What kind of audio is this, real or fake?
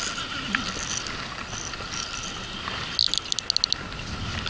real